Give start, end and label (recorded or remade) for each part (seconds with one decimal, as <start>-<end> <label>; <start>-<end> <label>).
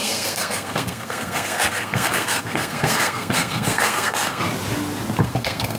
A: 0.0-4.4 remade; 4.4-5.2 recorded; 5.2-5.8 remade